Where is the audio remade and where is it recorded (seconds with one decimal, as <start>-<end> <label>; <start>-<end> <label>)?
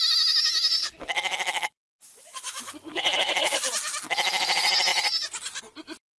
0.0-0.8 recorded; 0.8-2.9 remade; 2.9-6.2 recorded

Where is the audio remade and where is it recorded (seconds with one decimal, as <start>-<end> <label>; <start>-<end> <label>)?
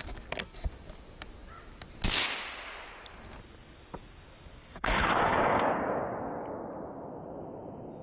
0.0-4.6 recorded; 4.6-7.1 remade; 7.1-8.0 recorded